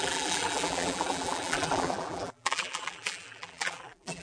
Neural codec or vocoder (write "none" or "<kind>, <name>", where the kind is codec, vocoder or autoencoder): vocoder, BigVGAN v2